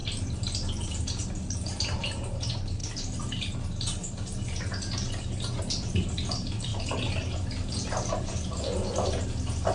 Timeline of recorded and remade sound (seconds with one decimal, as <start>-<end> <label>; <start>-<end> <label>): 0.0-0.8 recorded; 0.8-2.8 remade; 2.8-5.6 recorded; 5.6-6.7 remade; 6.7-7.7 recorded; 7.7-8.7 remade; 8.7-9.7 recorded